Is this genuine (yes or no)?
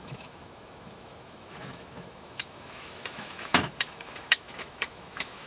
no